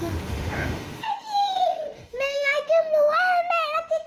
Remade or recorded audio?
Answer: remade